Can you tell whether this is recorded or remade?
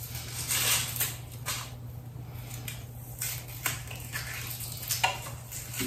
recorded